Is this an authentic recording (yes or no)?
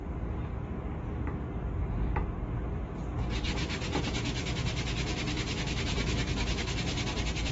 yes